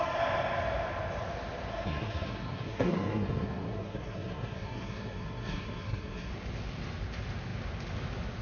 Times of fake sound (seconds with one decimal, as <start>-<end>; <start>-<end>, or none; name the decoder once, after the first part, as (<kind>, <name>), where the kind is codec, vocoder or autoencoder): 1.7-6.3 (codec, SNAC)